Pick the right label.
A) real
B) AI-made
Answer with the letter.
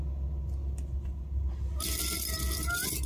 A